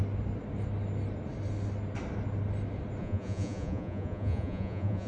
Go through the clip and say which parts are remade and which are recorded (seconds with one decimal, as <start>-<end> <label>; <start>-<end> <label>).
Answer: 0.0-3.0 recorded; 3.0-5.1 remade